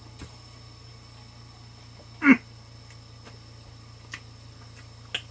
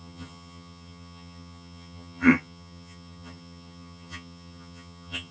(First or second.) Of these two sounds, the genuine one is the first